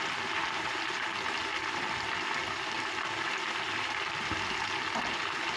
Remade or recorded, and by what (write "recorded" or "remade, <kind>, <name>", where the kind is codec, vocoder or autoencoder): recorded